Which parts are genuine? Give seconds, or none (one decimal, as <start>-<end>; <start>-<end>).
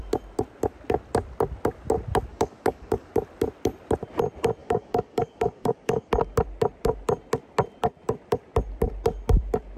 0.0-2.3; 3.1-4.6; 6.1-9.8